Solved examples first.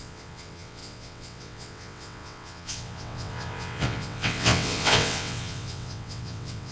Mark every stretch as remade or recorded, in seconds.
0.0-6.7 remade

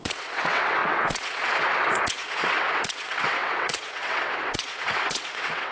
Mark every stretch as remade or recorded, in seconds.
0.0-5.7 remade

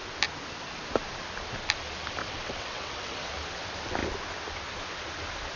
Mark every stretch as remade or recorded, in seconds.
0.0-2.2 recorded; 2.2-3.3 remade; 3.3-5.6 recorded

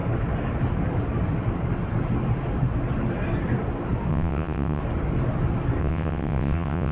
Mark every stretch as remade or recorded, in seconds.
0.0-4.1 recorded; 4.1-4.8 remade; 4.8-5.8 recorded; 5.8-6.9 remade

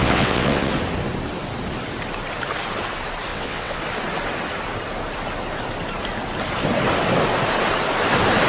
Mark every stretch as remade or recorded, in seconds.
0.0-0.7 remade; 0.7-3.3 recorded; 3.3-3.8 remade; 3.8-8.5 recorded

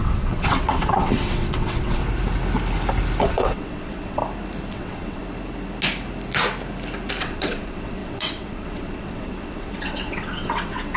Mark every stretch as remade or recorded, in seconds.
0.0-2.0 remade; 2.0-3.2 recorded; 3.2-4.2 remade; 4.2-4.7 recorded; 4.7-5.2 remade; 5.2-7.2 recorded; 7.2-11.0 remade